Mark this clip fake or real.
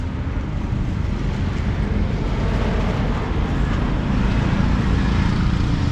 real